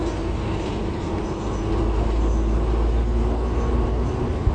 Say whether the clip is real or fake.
real